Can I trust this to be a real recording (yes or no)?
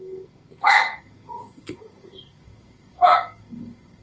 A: no